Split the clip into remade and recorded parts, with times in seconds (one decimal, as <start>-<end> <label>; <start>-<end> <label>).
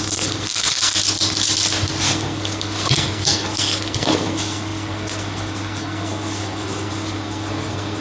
0.0-1.0 remade; 1.0-2.0 recorded; 2.0-8.0 remade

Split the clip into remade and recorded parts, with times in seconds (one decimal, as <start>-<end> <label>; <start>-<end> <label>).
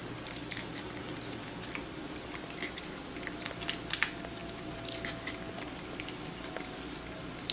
0.0-3.1 remade; 3.1-4.4 recorded; 4.4-5.1 remade; 5.1-7.5 recorded